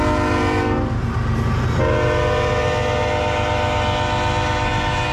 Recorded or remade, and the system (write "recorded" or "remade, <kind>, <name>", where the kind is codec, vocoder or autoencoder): recorded